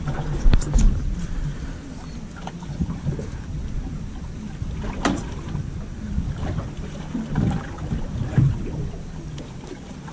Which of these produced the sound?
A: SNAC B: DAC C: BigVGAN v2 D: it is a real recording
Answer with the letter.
D